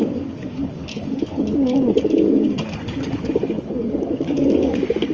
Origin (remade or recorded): remade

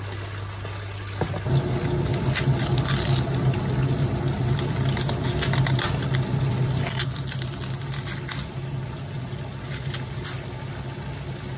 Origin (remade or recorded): recorded